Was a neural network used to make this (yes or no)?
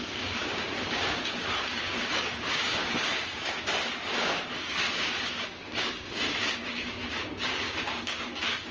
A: yes